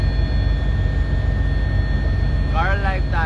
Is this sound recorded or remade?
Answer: recorded